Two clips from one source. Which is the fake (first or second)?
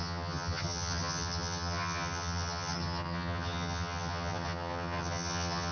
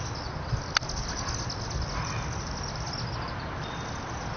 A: first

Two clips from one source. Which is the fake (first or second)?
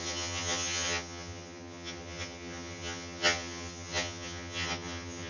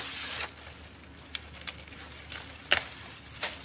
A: first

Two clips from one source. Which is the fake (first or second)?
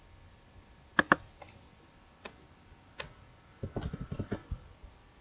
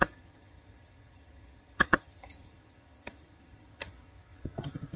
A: second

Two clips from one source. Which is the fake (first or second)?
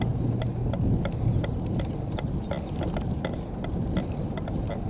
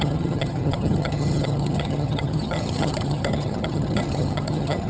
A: second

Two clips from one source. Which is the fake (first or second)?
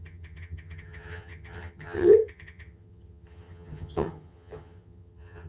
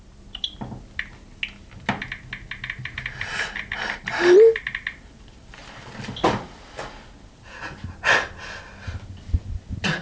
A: first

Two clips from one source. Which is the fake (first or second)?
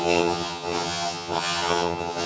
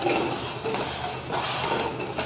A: first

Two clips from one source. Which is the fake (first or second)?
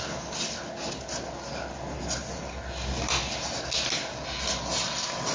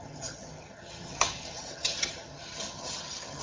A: second